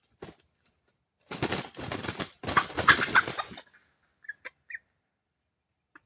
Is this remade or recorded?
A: recorded